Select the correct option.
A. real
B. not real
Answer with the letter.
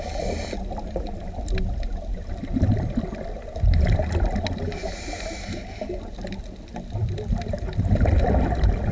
A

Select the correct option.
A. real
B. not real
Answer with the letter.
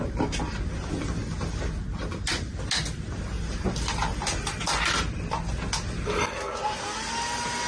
A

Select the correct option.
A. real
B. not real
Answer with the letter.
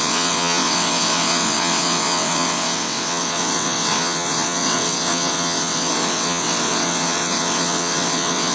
B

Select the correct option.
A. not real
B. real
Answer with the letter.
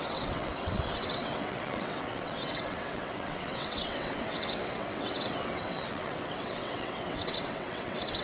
A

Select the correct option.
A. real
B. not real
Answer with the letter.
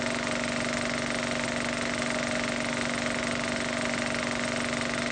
A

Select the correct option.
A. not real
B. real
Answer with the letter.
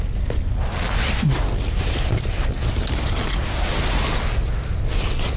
B